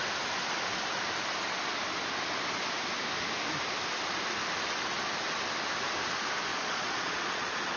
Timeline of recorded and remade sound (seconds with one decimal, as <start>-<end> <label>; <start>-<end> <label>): 0.0-6.5 recorded; 6.5-7.8 remade